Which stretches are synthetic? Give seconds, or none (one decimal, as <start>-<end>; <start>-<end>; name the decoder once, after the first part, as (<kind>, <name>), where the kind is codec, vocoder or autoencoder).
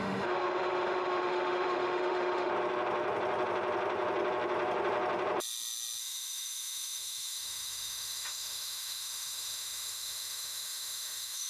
0.0-2.5 (autoencoder, DAC-VAE); 6.0-11.5